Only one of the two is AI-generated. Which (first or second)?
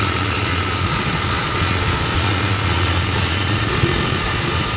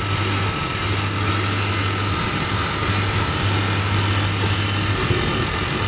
first